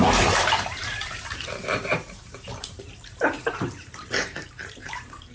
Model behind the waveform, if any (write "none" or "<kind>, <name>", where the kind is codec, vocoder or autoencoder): vocoder, BigVGAN v2